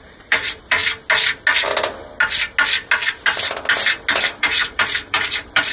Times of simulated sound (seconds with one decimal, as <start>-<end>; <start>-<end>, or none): 0.0-0.8; 4.2-5.7